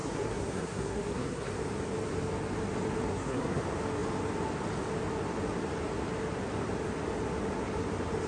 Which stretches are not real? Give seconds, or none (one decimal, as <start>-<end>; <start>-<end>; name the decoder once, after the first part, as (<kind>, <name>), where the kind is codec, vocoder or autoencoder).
0.0-1.5 (codec, SNAC); 3.1-3.6